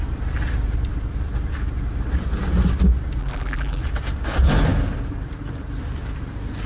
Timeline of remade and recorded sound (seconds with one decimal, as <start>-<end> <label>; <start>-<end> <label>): 0.0-3.2 recorded; 3.2-3.8 remade; 3.8-6.7 recorded